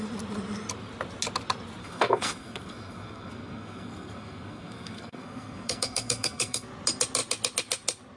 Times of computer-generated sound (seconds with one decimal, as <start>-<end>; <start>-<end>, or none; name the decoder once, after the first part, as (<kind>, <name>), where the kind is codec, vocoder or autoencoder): 1.8-6.7 (codec, SNAC)